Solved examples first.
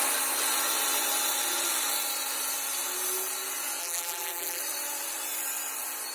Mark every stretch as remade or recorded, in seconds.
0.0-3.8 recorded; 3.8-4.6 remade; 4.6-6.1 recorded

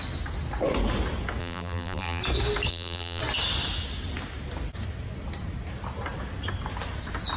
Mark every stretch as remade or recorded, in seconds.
0.0-1.4 recorded; 1.4-2.2 remade; 2.2-2.7 recorded; 2.7-3.2 remade; 3.2-7.4 recorded